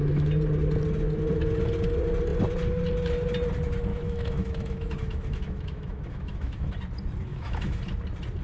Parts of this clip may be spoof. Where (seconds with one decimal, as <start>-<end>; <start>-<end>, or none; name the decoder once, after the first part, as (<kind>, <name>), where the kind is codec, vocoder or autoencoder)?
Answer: 3.9-6.7 (autoencoder, DAC-VAE); 7.3-7.8